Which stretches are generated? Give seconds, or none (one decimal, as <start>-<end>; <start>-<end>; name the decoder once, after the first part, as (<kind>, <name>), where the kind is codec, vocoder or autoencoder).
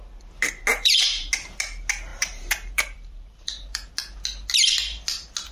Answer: 0.7-1.3 (vocoder, BigVGAN v2); 2.1-3.9